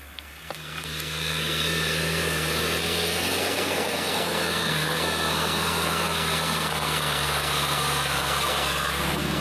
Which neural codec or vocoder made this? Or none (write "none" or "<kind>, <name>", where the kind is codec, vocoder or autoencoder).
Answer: codec, SNAC